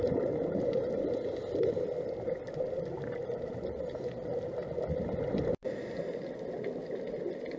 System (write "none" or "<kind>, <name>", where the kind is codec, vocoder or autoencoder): none